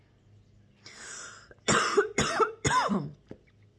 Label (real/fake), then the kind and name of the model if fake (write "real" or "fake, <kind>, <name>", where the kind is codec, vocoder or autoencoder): real